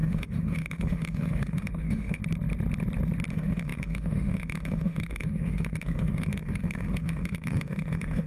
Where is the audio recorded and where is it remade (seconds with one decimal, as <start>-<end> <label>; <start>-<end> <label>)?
0.0-2.2 remade; 2.2-3.3 recorded; 3.3-8.3 remade